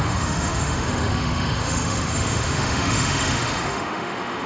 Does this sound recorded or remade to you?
remade